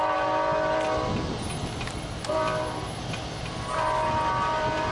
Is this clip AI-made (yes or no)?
no